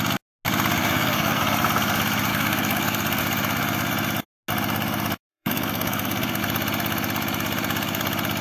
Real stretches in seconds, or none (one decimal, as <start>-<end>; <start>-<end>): 0.0-0.8; 1.4-2.3; 3.2-5.3; 6.4-8.4